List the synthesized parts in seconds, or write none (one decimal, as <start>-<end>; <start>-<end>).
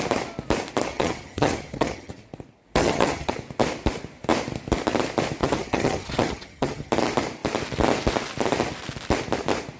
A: 0.9-2.1; 2.8-3.3; 5.4-6.9